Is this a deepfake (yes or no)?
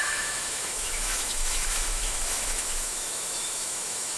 yes